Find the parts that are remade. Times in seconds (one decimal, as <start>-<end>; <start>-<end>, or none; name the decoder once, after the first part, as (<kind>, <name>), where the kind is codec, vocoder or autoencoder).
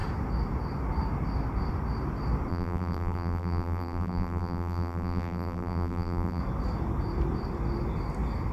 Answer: 2.5-6.4 (vocoder, BigVGAN v2)